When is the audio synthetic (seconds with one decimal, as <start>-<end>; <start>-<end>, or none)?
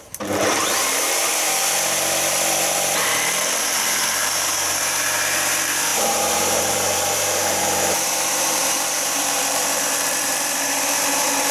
0.0-1.6; 3.6-11.5